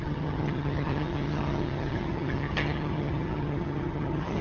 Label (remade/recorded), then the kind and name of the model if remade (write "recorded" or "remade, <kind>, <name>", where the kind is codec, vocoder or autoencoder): remade, vocoder, HiFi-GAN